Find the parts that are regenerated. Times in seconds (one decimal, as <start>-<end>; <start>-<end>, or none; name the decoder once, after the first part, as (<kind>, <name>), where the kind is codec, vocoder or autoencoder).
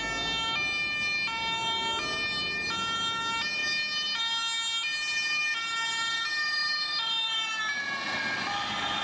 none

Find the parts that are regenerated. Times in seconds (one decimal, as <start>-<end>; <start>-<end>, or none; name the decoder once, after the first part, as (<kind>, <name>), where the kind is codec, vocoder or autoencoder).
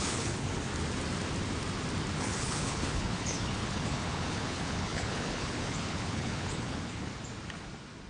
0.0-0.7 (codec, HILCodec); 2.2-7.1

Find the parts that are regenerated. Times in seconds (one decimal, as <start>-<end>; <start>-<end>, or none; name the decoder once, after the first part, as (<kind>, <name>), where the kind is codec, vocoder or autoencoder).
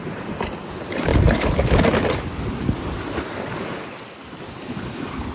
none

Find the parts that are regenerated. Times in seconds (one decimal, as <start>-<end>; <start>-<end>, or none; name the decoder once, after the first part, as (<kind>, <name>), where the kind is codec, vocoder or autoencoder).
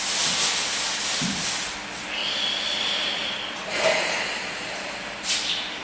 0.0-2.2 (vocoder, BigVGAN v2); 3.7-5.8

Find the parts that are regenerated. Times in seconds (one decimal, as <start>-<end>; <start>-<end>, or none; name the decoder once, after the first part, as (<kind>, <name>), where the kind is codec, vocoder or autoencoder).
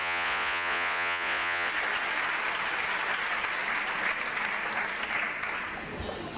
0.0-1.7 (vocoder, Vocos)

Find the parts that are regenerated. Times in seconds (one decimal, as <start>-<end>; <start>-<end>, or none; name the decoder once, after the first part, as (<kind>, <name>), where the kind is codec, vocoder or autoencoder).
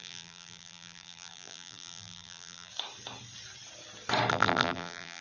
0.0-2.7 (vocoder, BigVGAN v2); 4.3-5.2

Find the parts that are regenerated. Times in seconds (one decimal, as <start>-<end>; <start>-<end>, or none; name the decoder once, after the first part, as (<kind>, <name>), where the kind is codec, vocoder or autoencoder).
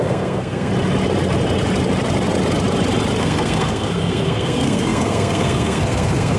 0.0-0.7 (codec, SNAC); 3.2-6.4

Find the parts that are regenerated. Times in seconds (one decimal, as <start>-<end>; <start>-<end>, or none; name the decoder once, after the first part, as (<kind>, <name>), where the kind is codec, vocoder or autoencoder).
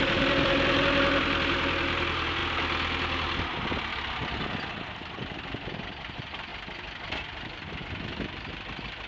0.0-2.4 (vocoder, BigVGAN v2); 3.5-6.5; 7.7-9.1